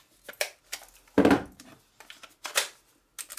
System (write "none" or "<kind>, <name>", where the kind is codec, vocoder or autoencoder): none